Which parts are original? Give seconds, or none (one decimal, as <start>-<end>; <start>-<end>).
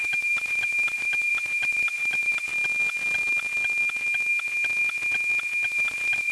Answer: 2.5-5.7